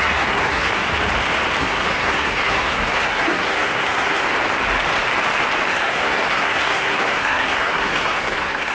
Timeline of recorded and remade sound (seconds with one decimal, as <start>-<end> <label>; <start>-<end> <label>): 0.0-0.7 remade; 0.7-1.6 recorded; 1.6-4.2 remade; 4.2-5.7 recorded; 5.7-8.7 remade